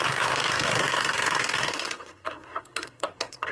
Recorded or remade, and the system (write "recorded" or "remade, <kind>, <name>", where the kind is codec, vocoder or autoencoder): remade, codec, SNAC